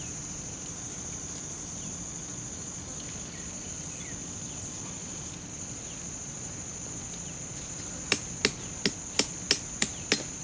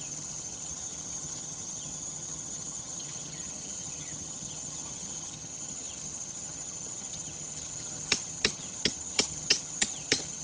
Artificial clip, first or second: second